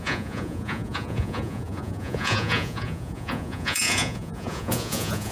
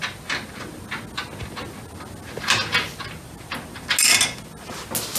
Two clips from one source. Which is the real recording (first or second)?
second